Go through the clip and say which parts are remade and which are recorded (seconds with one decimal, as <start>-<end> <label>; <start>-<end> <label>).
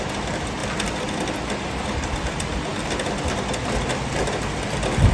0.0-5.1 recorded